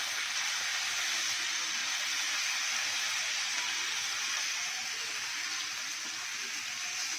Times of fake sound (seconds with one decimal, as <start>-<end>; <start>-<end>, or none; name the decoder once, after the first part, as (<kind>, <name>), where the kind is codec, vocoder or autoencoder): 0.7-1.3 (vocoder, BigVGAN v2)